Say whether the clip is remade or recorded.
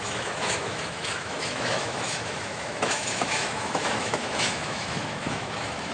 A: remade